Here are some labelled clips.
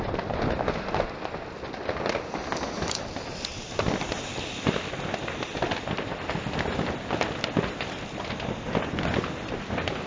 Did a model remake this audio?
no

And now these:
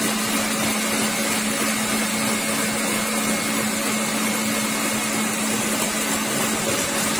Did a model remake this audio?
no